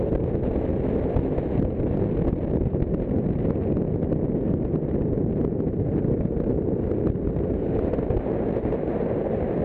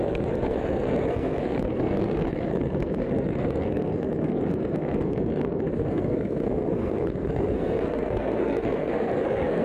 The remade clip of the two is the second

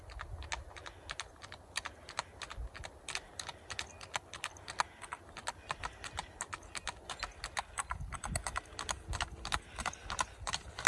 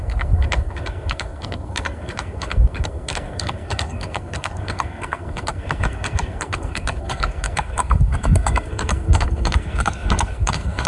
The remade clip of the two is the second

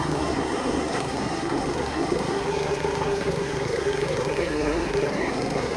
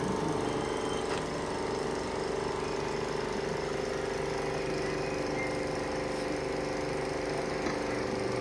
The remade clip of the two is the first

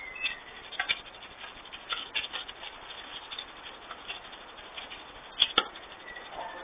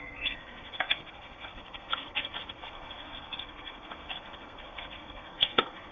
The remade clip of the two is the second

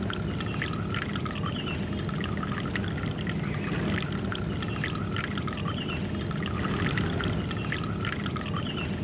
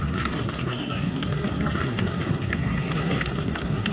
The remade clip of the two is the second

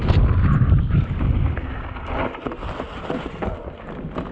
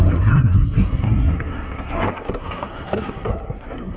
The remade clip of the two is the second